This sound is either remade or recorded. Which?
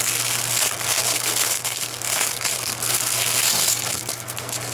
remade